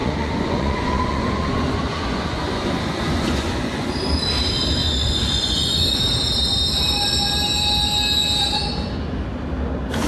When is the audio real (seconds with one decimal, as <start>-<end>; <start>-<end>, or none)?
3.9-4.8; 6.0-10.1